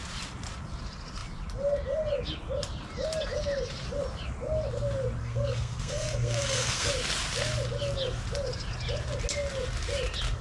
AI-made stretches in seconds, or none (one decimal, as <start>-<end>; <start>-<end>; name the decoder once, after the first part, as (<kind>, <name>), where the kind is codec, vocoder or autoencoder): 5.2-6.9 (codec, SNAC)

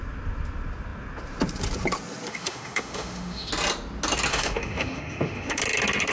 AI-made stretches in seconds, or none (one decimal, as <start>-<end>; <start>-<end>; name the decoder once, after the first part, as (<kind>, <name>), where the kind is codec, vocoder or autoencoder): 2.3-3.5 (autoencoder, DAC-VAE); 4.3-5.6

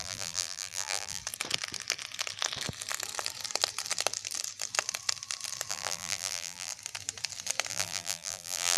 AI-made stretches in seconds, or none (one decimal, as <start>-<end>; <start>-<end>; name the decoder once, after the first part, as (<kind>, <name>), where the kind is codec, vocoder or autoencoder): 0.0-1.2 (vocoder, BigVGAN v2); 5.7-6.7; 7.7-8.8

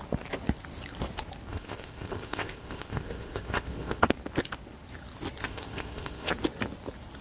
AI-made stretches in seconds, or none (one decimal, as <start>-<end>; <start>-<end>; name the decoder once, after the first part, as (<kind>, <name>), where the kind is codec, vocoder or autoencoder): 1.5-4.0 (codec, ZipCodec); 5.4-6.3